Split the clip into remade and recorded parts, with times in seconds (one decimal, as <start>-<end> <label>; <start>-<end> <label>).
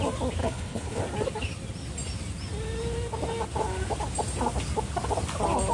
0.0-0.4 recorded; 0.4-1.0 remade; 1.0-5.7 recorded